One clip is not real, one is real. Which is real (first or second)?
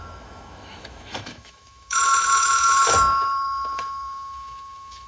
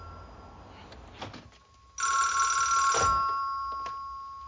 second